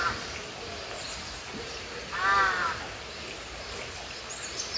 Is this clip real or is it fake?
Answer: real